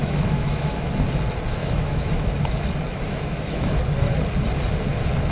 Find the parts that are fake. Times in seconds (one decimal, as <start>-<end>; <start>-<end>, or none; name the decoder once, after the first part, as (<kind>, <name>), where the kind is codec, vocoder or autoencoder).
0.0-0.9 (autoencoder, DAC-VAE); 1.6-2.4; 2.9-3.8